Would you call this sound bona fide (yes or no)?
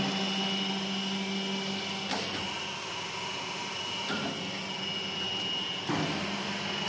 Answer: yes